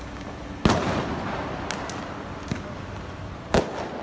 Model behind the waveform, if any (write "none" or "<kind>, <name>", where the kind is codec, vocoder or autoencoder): none